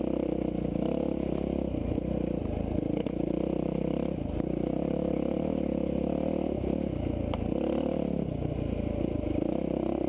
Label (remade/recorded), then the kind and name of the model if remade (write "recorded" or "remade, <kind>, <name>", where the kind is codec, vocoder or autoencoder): recorded